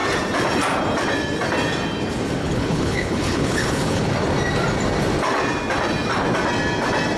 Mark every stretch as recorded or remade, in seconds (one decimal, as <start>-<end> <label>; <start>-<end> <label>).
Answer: 0.0-2.4 recorded; 2.4-4.1 remade; 4.1-7.2 recorded